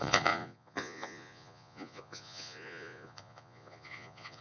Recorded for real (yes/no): no